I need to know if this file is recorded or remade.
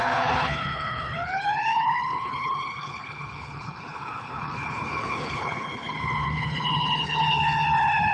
remade